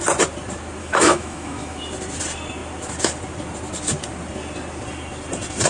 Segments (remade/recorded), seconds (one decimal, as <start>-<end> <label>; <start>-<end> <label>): 0.0-0.8 recorded; 0.8-1.8 remade; 1.8-5.7 recorded